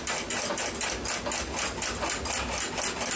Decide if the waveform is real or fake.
real